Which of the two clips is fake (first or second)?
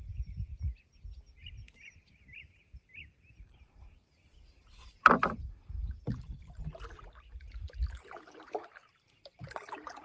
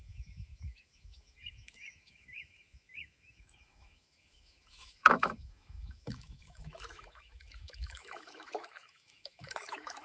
second